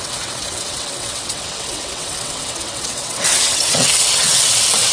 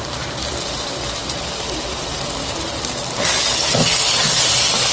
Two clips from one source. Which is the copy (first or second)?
first